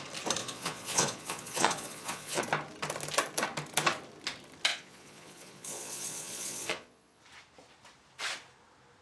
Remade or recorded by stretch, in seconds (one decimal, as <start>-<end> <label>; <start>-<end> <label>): 0.0-0.4 recorded; 0.4-2.4 remade; 2.4-4.7 recorded; 4.7-7.2 remade; 7.2-9.0 recorded